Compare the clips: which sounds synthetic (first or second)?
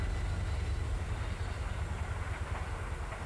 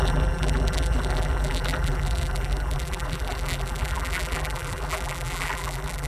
second